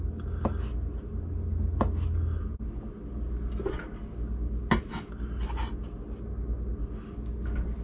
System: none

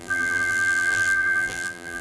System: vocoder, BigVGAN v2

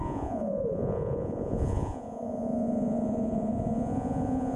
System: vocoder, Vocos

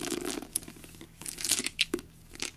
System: codec, DAC